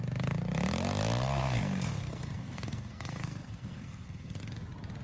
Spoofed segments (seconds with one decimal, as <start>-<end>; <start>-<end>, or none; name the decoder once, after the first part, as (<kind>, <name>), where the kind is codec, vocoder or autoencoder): 1.4-4.4 (codec, SNAC)